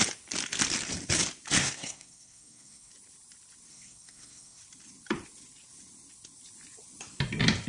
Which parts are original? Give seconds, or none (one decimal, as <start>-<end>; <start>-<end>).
0.0-1.6; 2.9-3.7; 4.6-7.7